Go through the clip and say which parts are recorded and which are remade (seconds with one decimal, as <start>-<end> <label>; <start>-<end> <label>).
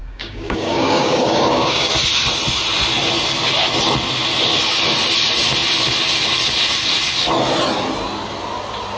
0.0-1.9 remade; 1.9-9.0 recorded